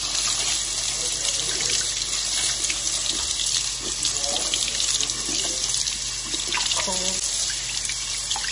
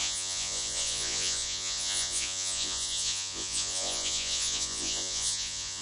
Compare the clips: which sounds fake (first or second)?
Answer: second